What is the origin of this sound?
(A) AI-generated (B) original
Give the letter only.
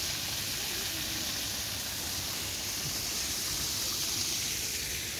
B